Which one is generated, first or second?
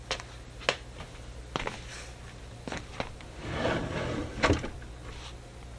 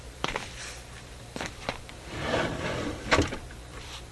second